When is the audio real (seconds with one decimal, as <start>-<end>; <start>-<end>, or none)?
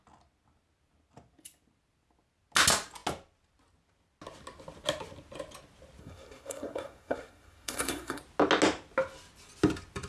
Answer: 0.0-6.0; 8.2-10.1